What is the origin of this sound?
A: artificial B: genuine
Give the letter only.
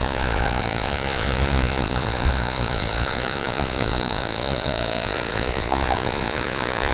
A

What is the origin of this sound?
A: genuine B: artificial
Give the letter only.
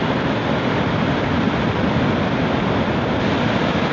A